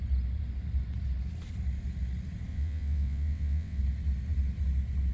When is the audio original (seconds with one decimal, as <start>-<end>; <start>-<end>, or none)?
0.0-2.5; 3.8-5.1